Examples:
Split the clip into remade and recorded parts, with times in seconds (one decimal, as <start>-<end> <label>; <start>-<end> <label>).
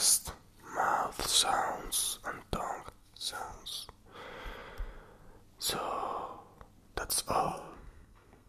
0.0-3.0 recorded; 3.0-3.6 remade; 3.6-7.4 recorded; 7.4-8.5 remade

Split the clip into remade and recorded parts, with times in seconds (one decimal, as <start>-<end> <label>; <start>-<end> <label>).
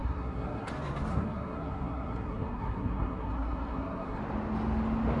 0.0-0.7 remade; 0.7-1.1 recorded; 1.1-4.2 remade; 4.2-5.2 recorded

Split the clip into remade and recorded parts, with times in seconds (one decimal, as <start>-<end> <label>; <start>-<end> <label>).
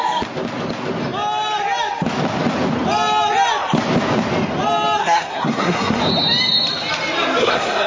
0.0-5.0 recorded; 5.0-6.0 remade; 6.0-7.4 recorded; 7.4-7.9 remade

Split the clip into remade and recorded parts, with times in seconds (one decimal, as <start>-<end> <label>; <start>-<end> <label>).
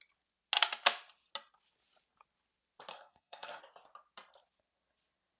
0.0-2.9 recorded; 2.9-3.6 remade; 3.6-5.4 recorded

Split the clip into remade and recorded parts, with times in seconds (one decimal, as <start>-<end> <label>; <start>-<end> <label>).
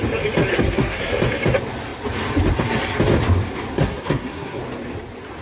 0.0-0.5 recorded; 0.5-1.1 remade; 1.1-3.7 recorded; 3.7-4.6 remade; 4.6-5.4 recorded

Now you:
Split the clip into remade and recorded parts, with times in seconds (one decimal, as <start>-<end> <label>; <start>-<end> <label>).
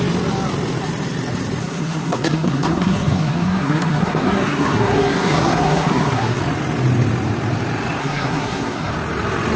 0.0-1.6 recorded; 1.6-6.4 remade; 6.4-8.0 recorded; 8.0-8.9 remade; 8.9-9.6 recorded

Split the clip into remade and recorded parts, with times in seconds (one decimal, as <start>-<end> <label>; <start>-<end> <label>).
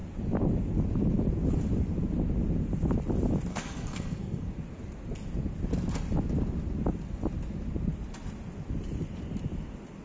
0.0-3.5 recorded; 3.5-4.5 remade; 4.5-10.0 recorded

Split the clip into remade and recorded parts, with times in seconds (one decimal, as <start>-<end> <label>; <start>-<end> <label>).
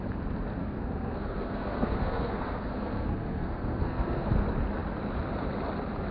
0.0-0.6 recorded; 0.6-4.3 remade; 4.3-6.1 recorded